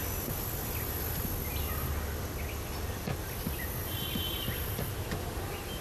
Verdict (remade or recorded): recorded